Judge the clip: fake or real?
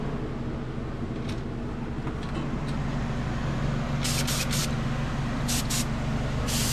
real